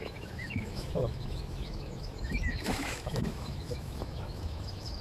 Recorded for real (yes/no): no